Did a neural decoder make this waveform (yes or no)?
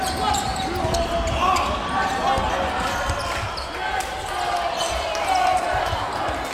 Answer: no